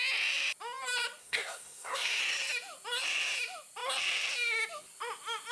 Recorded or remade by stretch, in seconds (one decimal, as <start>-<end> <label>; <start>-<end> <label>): 0.0-1.2 recorded; 1.2-2.2 remade; 2.2-5.5 recorded